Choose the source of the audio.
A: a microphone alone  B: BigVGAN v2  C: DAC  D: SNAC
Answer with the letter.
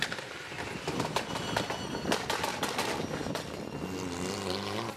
A